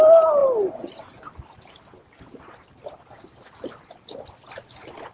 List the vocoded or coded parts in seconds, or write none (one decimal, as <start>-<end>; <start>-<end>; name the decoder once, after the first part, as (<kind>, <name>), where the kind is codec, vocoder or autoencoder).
none